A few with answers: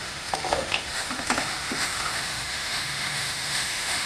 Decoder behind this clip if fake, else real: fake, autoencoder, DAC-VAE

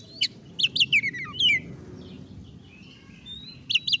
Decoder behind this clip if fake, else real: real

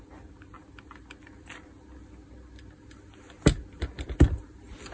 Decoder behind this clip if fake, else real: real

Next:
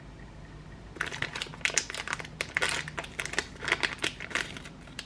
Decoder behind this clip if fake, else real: real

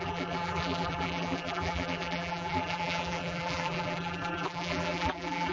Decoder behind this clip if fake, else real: fake, vocoder, BigVGAN v2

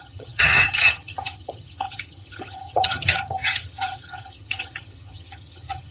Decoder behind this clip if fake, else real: fake, vocoder, HiFi-GAN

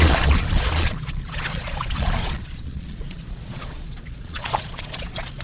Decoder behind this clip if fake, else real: fake, vocoder, Vocos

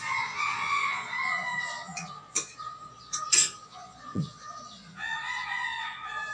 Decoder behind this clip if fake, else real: fake, vocoder, Vocos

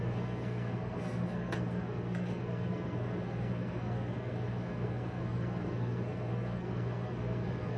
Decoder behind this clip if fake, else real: fake, codec, SNAC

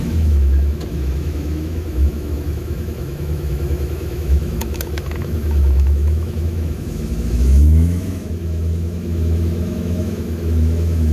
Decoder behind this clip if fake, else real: fake, autoencoder, DAC-VAE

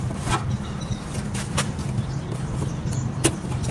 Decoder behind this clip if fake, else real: fake, vocoder, BigVGAN v2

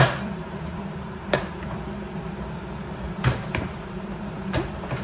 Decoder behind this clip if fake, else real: fake, vocoder, BigVGAN v2